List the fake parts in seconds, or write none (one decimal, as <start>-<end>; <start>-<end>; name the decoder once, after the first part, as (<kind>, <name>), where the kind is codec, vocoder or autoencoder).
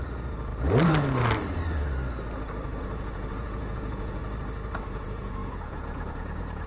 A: 0.0-0.5 (vocoder, Vocos); 2.8-4.2; 4.8-6.7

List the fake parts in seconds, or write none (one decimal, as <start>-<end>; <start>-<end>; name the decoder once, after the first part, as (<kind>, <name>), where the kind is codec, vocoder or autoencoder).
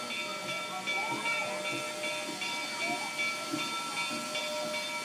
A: none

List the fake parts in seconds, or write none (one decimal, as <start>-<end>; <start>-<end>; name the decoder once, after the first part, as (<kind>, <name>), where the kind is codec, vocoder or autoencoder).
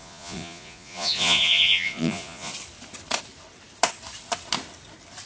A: 0.0-2.5 (vocoder, Vocos)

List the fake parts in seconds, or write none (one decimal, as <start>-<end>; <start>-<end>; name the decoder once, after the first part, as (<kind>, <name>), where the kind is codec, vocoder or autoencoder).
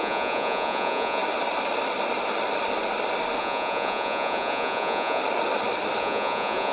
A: 0.0-1.2 (vocoder, Vocos); 3.4-5.2; 6.0-6.7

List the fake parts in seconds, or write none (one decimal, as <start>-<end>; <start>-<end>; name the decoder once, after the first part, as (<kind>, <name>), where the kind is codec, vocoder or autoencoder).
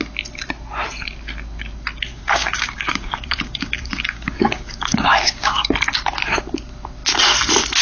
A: 2.1-5.7 (codec, DAC)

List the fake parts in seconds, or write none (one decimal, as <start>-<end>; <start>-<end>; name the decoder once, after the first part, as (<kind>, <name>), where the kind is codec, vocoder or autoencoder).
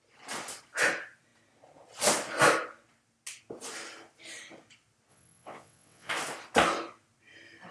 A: 5.1-6.1 (vocoder, WaveNeXt)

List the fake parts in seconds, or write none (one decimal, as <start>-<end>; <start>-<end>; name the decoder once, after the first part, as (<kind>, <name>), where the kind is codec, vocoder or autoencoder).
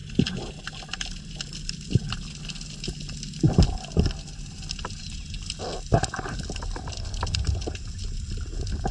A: none